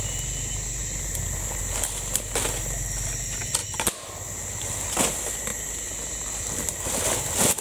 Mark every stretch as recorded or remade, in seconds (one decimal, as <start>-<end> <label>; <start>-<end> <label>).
0.0-0.8 remade; 0.8-1.6 recorded; 1.6-3.6 remade; 3.6-4.6 recorded; 4.6-7.6 remade